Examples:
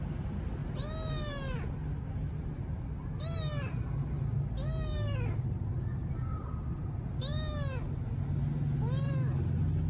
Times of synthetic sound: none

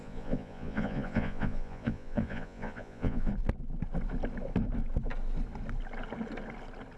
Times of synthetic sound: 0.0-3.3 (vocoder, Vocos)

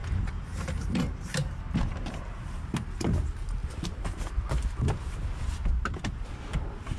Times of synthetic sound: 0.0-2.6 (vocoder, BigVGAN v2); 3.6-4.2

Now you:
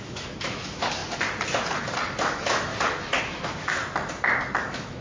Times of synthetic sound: 0.0-1.0 (autoencoder, DAC-VAE); 2.2-2.7; 3.2-3.8; 4.6-5.0

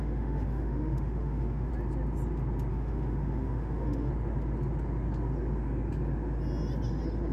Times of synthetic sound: 0.0-1.7 (autoencoder, DAC-VAE); 2.7-4.1

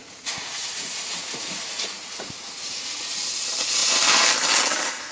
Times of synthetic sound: 0.0-3.1 (vocoder, Vocos)